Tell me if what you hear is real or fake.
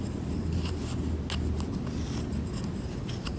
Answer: real